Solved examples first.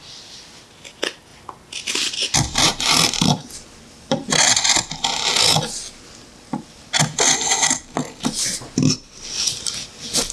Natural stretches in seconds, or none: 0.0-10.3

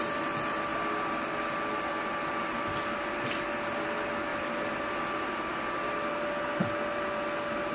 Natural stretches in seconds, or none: 6.6-7.7

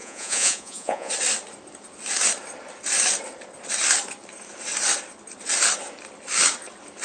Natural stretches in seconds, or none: 1.1-7.0

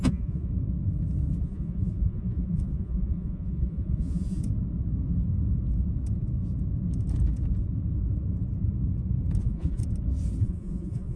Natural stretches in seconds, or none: 0.5-1.4; 4.4-9.4; 9.8-10.4